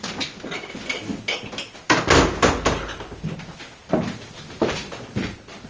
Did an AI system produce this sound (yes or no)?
no